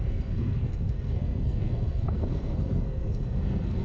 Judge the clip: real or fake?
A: fake